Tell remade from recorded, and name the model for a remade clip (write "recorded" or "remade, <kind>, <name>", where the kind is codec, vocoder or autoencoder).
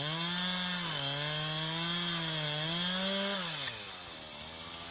recorded